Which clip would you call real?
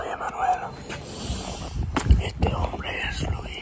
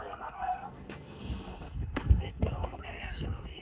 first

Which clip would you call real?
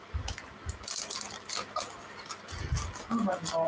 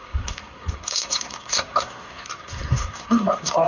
first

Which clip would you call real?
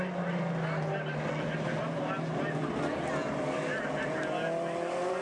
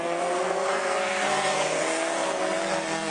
first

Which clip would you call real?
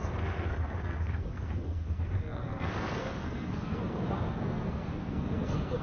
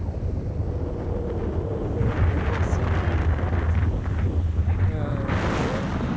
second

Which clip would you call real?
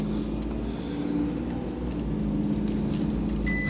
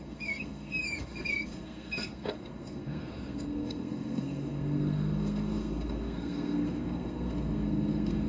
first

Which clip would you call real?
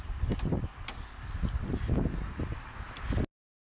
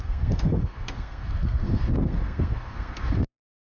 first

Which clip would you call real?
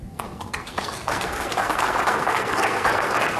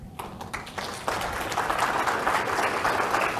second